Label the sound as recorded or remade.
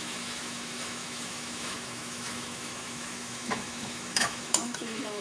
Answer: remade